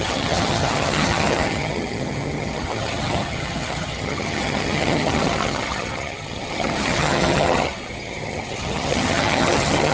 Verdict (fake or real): fake